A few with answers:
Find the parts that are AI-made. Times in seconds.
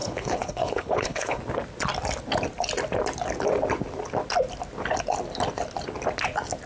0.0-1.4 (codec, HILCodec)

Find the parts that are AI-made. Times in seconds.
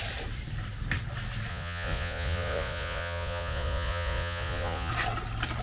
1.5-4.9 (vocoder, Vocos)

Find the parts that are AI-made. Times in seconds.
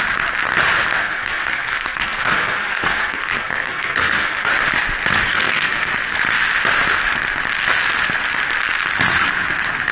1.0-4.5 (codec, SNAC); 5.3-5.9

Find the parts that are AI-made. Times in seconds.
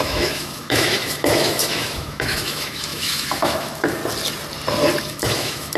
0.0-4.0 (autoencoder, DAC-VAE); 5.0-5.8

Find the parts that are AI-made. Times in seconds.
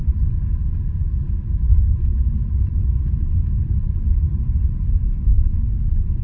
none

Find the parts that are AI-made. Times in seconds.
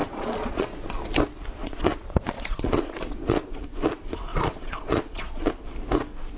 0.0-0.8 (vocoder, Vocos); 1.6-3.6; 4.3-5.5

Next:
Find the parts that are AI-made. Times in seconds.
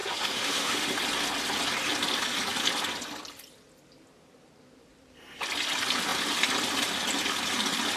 0.0-0.9 (autoencoder, DAC-VAE)